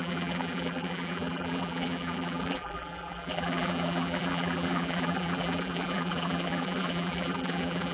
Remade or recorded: remade